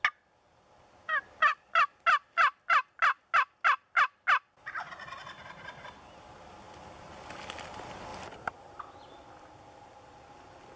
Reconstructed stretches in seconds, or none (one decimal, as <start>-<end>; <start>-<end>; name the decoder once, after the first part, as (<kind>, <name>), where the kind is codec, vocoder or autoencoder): none

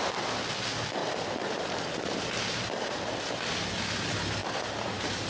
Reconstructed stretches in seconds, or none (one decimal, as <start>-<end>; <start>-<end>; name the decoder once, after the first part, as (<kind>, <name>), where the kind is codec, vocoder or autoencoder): 1.0-3.8 (vocoder, BigVGAN v2); 4.4-5.3

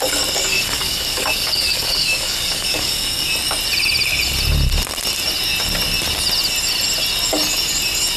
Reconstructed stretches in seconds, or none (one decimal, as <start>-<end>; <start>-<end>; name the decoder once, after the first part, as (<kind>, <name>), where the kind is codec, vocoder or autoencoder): 0.5-3.3 (codec, DAC)

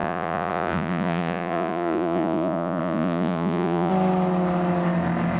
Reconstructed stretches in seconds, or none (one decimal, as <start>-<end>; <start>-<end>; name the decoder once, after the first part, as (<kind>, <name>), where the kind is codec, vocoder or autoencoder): 0.0-3.9 (vocoder, Vocos)

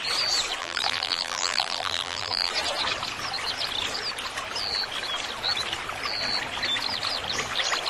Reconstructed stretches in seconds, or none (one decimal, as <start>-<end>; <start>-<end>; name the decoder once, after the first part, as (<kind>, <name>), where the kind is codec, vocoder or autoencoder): 0.6-2.5 (vocoder, BigVGAN v2)

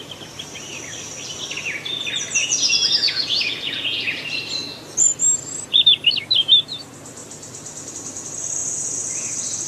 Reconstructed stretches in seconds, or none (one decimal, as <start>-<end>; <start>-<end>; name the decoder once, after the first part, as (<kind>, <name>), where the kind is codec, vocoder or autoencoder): 2.4-4.1 (vocoder, Vocos)